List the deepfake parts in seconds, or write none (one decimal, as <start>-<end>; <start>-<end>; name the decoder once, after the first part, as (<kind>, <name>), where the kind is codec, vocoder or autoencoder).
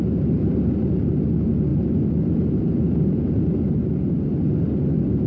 1.7-3.0 (vocoder, BigVGAN v2)